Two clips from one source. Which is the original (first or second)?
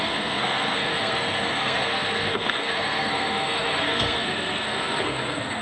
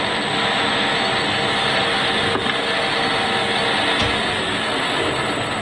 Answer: second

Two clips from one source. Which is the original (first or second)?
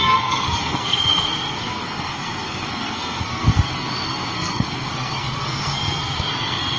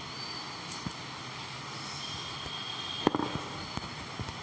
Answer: second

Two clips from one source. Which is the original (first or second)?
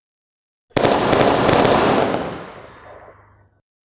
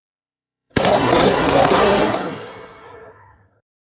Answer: first